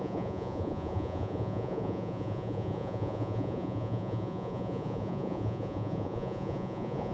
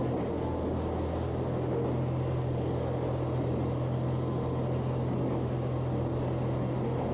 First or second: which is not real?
first